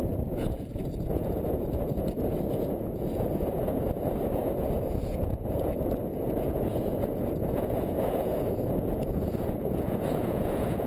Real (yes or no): no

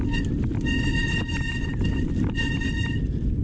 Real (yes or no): yes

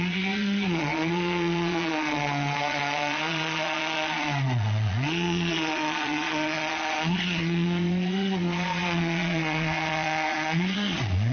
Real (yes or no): no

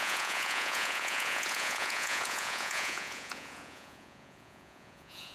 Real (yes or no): no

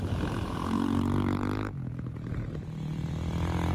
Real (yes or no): yes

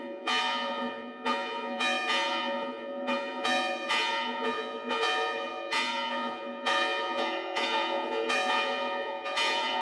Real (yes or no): no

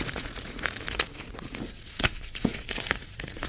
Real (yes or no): no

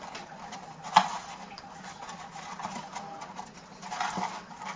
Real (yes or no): yes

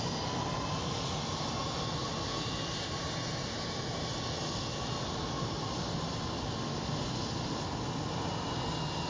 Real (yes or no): yes